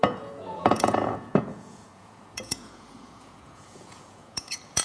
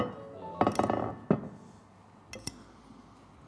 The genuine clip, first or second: second